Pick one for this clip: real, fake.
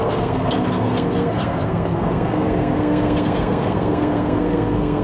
fake